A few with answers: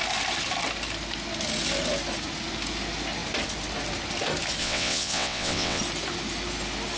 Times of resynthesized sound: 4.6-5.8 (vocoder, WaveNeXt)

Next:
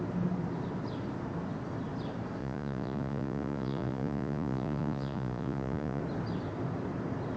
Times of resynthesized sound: 2.4-6.0 (vocoder, Vocos)

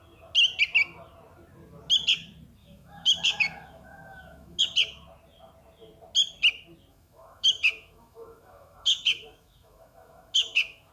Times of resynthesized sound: 2.6-4.6 (autoencoder, DAC-VAE); 6.9-10.9

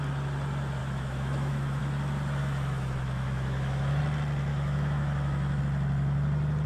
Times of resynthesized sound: 0.8-1.8 (autoencoder, DAC-VAE); 2.4-4.0; 4.5-5.6